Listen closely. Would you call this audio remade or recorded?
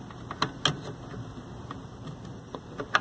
recorded